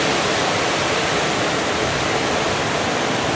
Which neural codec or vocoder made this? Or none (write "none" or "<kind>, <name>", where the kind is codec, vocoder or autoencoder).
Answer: vocoder, BigVGAN v2